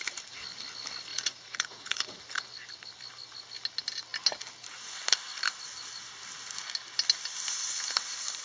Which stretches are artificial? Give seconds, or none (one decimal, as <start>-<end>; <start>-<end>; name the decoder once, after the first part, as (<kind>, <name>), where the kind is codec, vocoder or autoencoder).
1.1-2.2 (vocoder, Vocos)